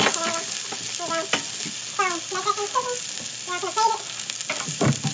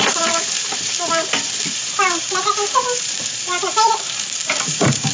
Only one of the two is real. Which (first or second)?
first